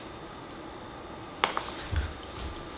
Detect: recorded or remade recorded